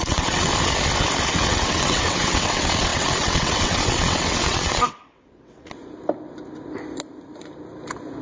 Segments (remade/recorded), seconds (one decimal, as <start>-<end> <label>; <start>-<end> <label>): 0.0-0.5 remade; 0.5-1.3 recorded; 1.3-5.8 remade; 5.8-8.2 recorded